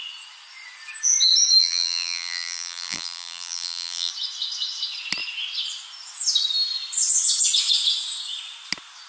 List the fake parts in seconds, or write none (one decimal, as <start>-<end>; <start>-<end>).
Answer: 1.6-4.1